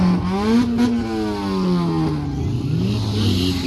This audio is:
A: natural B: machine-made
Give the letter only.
A